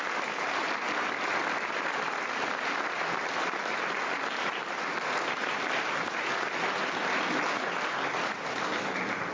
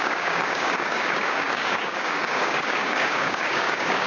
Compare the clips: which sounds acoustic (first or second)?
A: first